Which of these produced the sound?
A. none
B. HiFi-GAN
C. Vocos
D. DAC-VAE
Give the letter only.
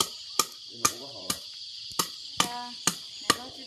A